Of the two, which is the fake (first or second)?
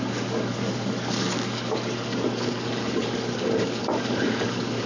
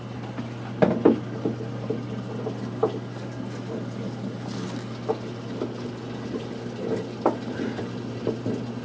first